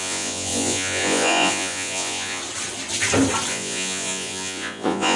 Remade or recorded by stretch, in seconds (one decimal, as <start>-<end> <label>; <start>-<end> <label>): 0.0-2.4 remade; 2.4-3.5 recorded; 3.5-5.2 remade